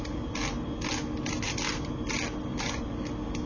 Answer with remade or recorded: recorded